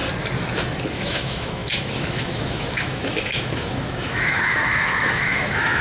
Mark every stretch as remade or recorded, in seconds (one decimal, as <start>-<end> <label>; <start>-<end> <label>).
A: 0.0-0.9 recorded; 0.9-5.8 remade